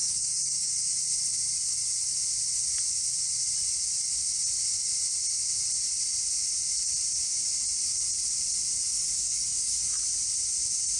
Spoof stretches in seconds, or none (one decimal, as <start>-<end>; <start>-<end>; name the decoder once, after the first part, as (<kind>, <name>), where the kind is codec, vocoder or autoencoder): 0.0-1.0 (codec, DAC); 8.9-9.9